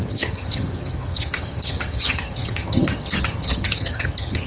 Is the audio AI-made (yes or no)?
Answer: yes